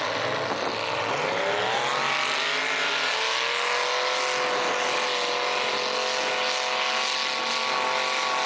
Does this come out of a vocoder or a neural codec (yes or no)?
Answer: no